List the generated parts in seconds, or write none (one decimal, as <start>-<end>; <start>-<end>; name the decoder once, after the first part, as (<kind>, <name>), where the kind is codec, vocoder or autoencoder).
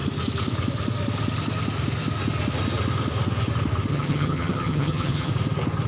3.9-5.3 (vocoder, HiFi-GAN)